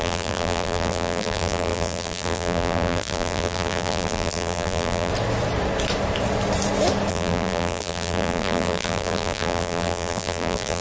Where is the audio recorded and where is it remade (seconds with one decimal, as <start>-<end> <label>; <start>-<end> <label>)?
0.0-5.1 remade; 5.1-7.1 recorded; 7.1-10.8 remade